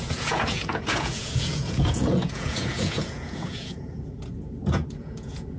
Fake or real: fake